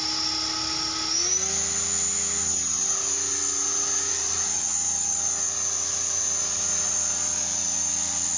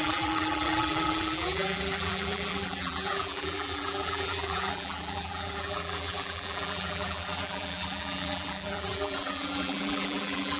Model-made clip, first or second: second